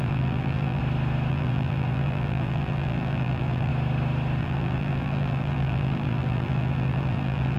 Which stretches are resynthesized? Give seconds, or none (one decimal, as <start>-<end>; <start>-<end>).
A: 0.0-0.8; 1.3-3.7; 4.4-7.6